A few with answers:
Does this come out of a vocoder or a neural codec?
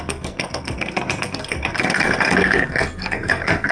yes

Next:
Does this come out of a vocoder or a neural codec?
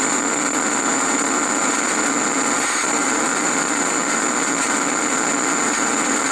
no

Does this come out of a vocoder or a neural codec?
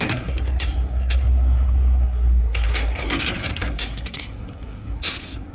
yes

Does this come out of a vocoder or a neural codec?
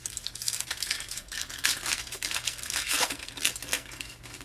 yes